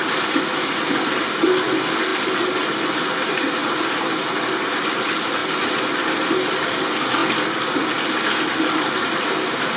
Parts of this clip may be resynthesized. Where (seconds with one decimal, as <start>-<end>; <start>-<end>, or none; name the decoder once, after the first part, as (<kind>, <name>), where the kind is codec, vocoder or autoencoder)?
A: none